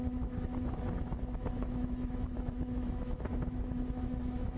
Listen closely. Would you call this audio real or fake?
fake